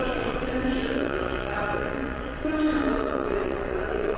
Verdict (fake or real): fake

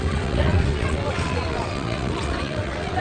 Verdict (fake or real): fake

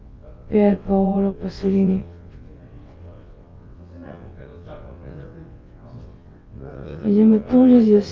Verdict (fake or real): fake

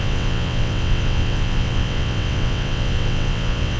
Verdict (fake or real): fake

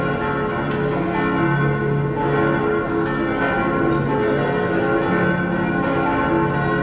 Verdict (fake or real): real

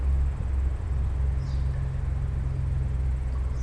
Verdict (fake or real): real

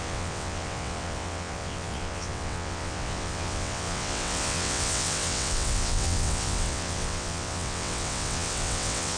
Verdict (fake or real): fake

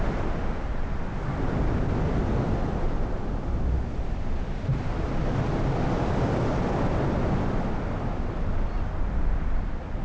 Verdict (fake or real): real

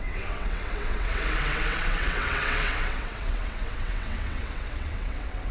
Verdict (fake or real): fake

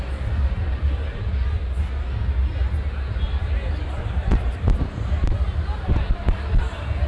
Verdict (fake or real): real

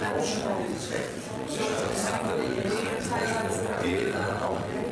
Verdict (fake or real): fake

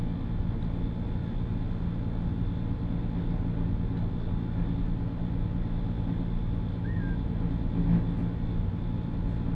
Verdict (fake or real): real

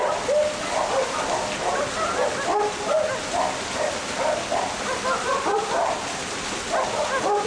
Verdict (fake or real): real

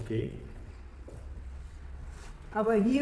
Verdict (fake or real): fake